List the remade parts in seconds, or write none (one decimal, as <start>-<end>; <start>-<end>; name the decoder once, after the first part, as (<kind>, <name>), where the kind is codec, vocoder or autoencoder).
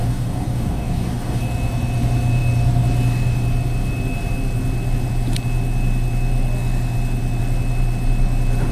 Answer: 0.0-1.4 (codec, DAC)